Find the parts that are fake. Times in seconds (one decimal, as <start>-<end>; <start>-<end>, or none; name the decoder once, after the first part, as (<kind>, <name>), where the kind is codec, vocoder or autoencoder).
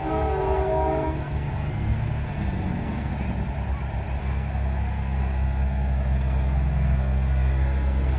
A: 0.0-3.1 (codec, SNAC); 4.2-8.2